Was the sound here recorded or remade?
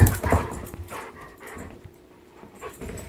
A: remade